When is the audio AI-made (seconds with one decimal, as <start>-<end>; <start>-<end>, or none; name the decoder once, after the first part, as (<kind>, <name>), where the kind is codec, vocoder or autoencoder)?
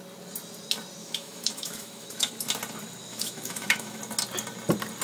1.0-2.3 (autoencoder, DAC-VAE); 3.1-4.0